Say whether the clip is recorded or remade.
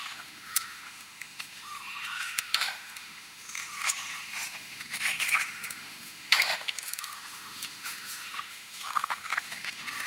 remade